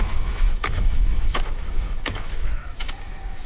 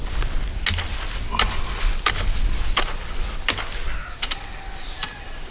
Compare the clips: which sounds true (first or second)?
second